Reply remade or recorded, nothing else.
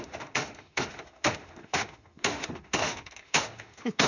remade